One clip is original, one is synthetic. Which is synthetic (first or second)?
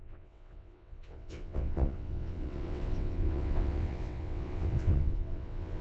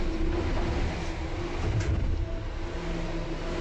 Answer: first